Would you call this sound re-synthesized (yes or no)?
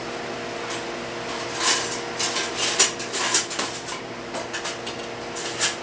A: no